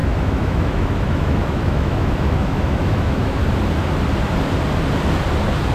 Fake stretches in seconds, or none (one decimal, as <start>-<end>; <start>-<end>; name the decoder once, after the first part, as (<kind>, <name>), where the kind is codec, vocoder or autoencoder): 0.0-3.4 (autoencoder, DAC-VAE)